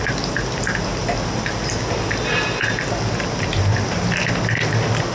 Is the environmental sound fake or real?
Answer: real